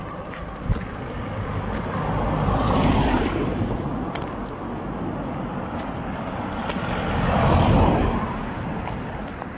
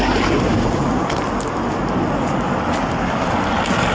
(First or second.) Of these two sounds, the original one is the second